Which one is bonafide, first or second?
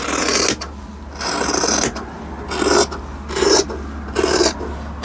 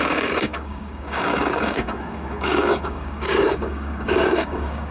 first